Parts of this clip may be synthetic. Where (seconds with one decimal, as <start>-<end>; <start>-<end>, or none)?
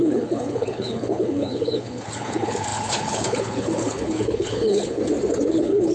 0.0-5.0; 5.5-5.9